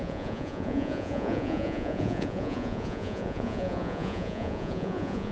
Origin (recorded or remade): remade